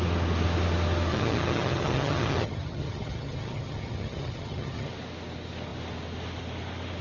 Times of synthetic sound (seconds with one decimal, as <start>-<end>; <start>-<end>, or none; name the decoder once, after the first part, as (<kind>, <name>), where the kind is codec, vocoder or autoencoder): 1.1-4.9 (vocoder, HiFi-GAN)